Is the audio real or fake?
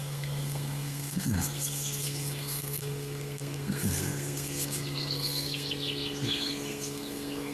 fake